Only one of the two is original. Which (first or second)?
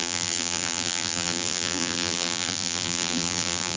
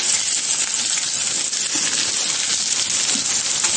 second